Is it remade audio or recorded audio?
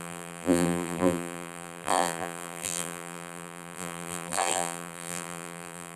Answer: remade